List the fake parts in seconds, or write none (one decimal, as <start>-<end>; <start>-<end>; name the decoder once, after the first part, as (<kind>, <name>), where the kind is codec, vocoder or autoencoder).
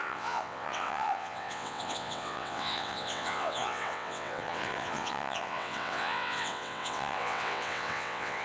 0.0-8.4 (vocoder, WaveNeXt)